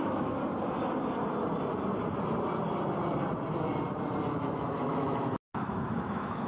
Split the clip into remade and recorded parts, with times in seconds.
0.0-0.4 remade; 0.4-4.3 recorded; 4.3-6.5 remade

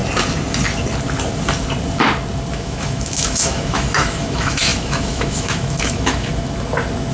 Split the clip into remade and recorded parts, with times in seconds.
0.0-2.5 recorded; 2.5-6.3 remade; 6.3-7.1 recorded

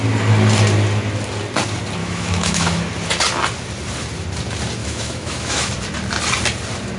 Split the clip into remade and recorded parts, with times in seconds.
0.0-2.0 recorded; 2.0-2.8 remade; 2.8-4.8 recorded; 4.8-5.7 remade; 5.7-7.0 recorded

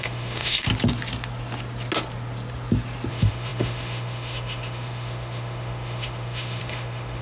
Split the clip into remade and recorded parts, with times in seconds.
0.0-0.7 remade; 0.7-3.1 recorded; 3.1-7.2 remade

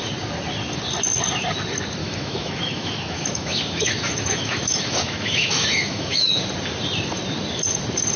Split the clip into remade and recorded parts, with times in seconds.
0.0-2.0 recorded; 2.0-6.3 remade; 6.3-8.2 recorded

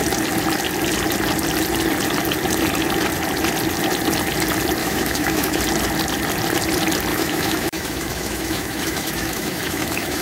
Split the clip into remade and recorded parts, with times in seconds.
0.0-4.8 recorded; 4.8-5.6 remade; 5.6-7.1 recorded; 7.1-10.2 remade

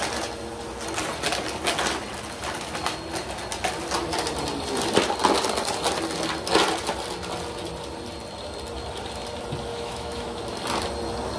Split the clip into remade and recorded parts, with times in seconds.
0.0-9.7 recorded; 9.7-10.4 remade; 10.4-11.4 recorded